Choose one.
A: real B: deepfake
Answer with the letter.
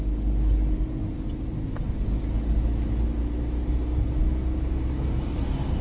A